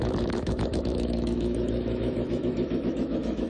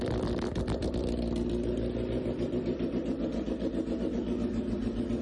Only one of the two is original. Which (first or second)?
second